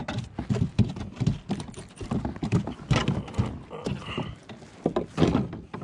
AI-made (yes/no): no